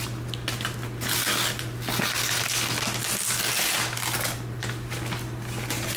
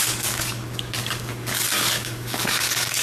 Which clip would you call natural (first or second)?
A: first